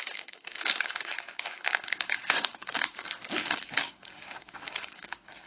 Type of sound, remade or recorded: remade